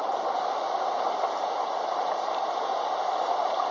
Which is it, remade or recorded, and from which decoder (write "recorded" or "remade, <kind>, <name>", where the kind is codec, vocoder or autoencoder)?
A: recorded